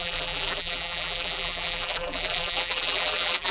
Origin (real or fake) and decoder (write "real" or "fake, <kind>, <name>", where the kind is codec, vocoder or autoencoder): fake, vocoder, BigVGAN v2